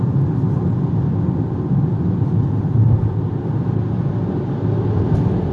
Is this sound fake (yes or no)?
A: no